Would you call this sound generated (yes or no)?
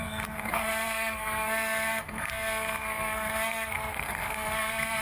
yes